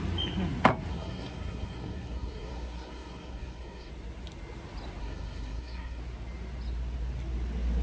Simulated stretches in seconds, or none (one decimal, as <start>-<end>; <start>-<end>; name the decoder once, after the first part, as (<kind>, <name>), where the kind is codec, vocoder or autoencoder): 0.9-3.9 (codec, SNAC); 5.0-6.0